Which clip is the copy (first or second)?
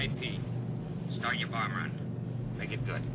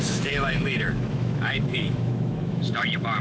second